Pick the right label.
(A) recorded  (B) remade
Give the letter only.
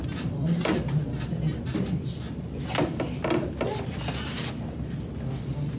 A